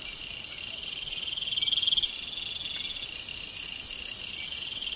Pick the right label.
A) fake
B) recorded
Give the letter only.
B